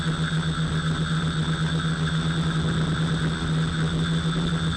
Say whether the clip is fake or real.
real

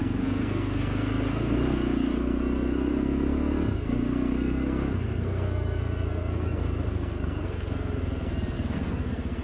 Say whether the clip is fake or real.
fake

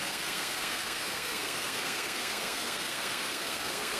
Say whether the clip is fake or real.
fake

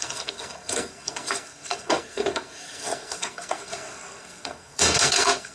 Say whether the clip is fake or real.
fake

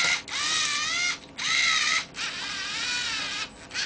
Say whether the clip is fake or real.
real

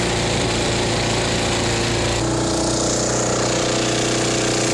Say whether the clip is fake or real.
real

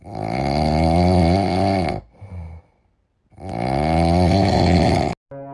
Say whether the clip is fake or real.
real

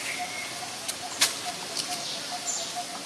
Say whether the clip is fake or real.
real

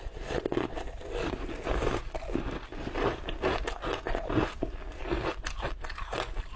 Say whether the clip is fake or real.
real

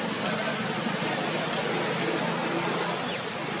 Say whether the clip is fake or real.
real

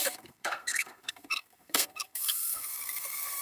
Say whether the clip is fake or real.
fake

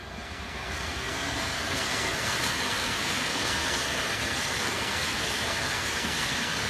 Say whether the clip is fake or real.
fake